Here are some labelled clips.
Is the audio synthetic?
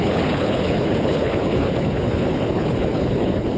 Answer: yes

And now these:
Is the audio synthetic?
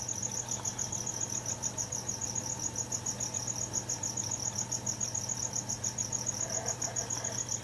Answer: no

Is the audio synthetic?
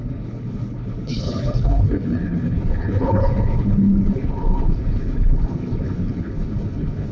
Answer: yes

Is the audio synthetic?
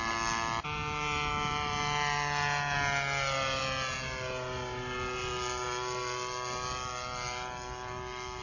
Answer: no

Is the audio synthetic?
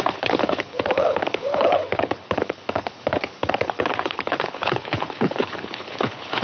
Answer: yes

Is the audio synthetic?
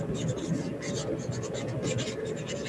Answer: no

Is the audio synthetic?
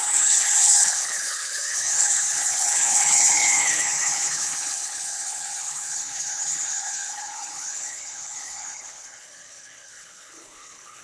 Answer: yes